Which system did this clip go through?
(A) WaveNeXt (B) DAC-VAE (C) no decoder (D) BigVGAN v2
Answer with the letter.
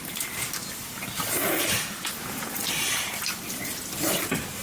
C